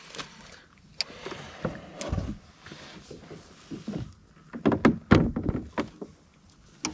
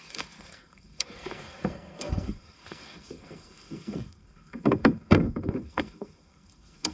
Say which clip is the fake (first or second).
second